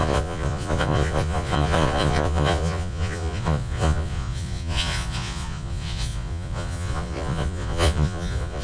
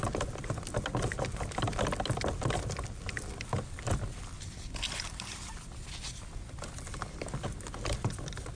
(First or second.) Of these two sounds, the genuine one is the second